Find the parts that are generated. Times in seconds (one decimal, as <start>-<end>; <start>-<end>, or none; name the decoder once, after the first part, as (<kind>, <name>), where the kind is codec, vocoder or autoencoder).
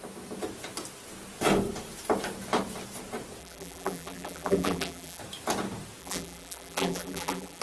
3.4-5.2 (vocoder, BigVGAN v2); 6.0-7.6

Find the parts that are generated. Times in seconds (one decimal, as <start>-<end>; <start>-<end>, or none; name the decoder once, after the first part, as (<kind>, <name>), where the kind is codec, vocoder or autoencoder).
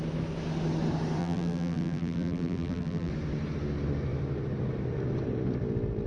1.2-3.1 (vocoder, BigVGAN v2)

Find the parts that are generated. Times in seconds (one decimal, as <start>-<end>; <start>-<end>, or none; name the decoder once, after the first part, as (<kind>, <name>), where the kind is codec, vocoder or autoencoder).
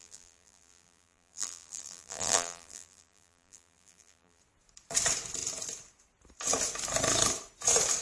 0.0-4.4 (vocoder, BigVGAN v2)